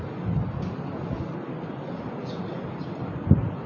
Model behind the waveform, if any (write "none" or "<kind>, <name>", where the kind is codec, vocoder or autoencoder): none